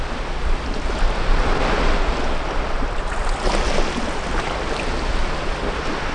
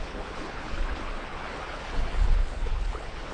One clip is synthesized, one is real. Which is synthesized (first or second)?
second